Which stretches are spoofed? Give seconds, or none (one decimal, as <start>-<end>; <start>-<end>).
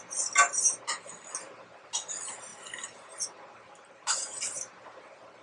none